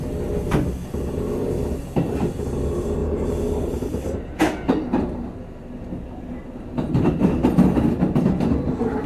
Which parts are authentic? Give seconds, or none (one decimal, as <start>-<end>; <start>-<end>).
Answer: 0.0-3.0; 4.4-9.1